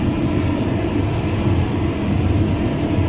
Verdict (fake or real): real